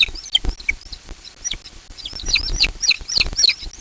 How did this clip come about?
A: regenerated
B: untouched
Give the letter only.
B